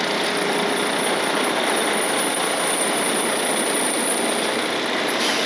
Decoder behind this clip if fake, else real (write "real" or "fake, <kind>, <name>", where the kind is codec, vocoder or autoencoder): real